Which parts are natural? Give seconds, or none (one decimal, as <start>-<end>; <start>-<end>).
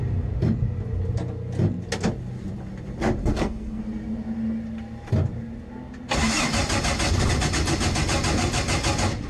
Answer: 0.0-3.2; 3.8-9.3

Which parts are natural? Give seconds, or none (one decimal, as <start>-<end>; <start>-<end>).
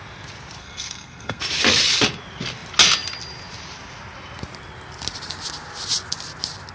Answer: 0.0-0.6; 1.4-6.7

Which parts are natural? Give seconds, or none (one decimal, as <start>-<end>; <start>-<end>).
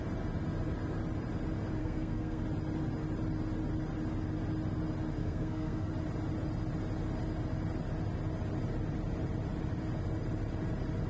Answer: 0.0-1.8; 2.4-5.2; 5.9-11.1